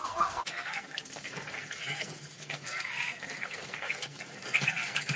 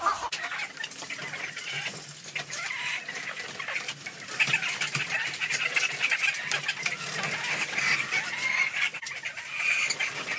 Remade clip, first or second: first